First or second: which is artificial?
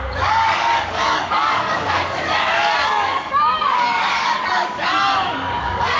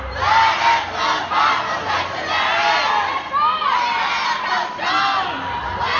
first